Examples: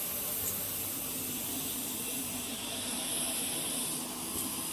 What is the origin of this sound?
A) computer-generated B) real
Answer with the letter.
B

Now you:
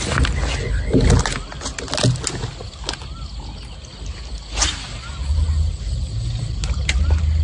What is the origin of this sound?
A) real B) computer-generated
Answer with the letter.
A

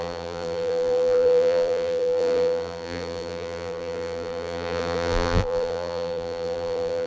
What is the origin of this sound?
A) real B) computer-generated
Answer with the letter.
B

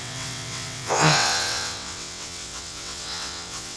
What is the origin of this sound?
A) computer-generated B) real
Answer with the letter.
A